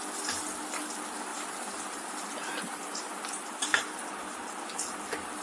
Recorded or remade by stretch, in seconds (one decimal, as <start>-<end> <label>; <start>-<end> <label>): 0.0-1.3 recorded; 1.3-4.5 remade; 4.5-5.4 recorded